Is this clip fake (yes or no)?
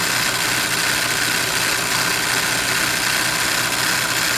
no